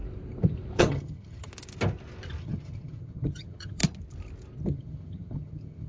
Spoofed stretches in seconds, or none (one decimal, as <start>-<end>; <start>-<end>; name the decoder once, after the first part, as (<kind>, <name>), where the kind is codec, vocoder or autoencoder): 0.8-1.5 (vocoder, HiFi-GAN); 2.4-3.8; 4.6-5.9